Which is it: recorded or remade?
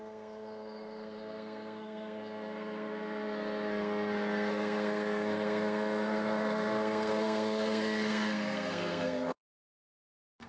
remade